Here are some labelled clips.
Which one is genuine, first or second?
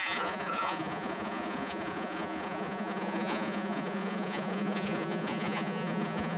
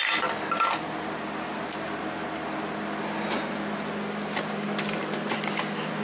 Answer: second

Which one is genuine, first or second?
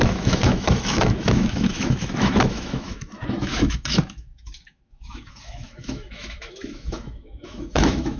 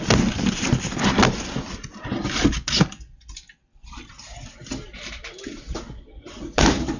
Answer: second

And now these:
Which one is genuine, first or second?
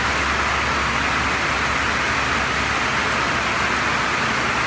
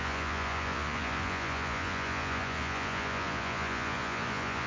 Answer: first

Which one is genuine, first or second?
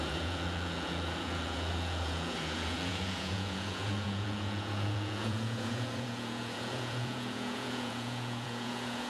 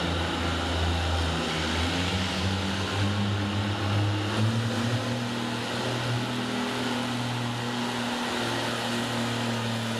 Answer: second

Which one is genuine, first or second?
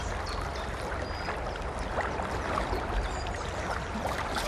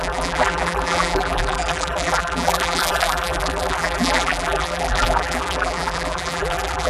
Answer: first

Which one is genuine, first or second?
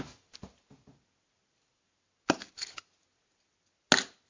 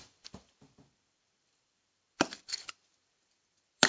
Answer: first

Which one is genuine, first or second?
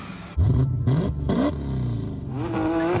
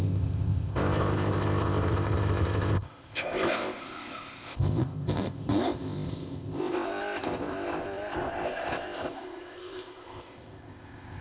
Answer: first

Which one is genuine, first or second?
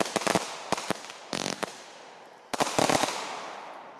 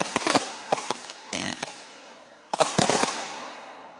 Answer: first